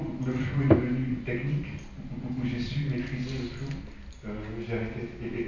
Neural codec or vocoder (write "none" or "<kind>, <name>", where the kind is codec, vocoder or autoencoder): none